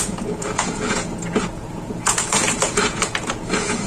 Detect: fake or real fake